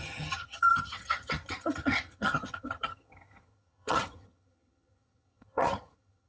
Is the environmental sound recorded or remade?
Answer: remade